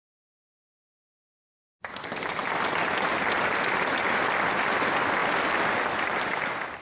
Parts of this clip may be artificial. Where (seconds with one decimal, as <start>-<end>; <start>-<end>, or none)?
0.0-2.4; 3.4-5.2; 6.2-6.8